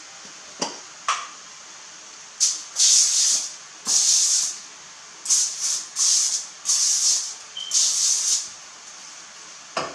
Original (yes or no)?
yes